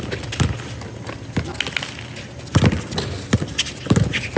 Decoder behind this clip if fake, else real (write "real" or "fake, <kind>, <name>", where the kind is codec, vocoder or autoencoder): real